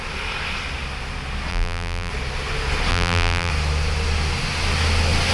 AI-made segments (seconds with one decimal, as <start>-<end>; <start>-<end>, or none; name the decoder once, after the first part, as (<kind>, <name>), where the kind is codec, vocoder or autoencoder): 1.5-2.1 (vocoder, BigVGAN v2); 2.9-3.5